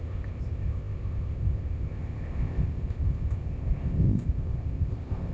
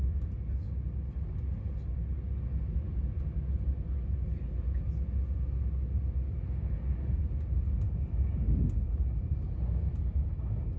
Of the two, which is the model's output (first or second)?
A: first